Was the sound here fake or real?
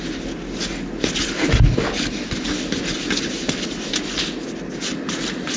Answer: real